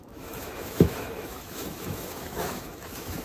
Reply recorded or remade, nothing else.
remade